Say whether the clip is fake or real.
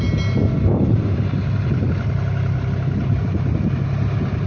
real